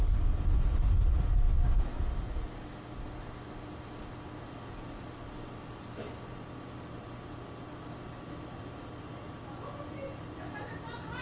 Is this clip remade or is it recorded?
recorded